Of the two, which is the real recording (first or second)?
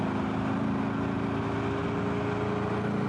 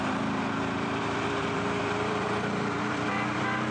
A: first